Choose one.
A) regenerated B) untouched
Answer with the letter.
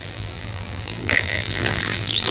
A